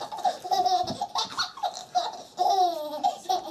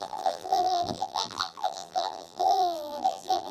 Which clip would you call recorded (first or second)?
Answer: first